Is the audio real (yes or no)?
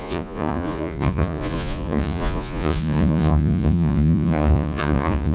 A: no